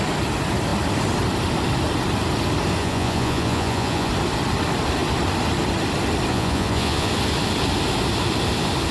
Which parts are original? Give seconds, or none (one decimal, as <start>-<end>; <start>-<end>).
0.0-2.8; 4.1-6.3; 7.1-8.9